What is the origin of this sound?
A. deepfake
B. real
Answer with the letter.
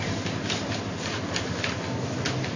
B